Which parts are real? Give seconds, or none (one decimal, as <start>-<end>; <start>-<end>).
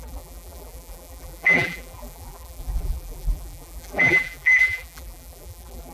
none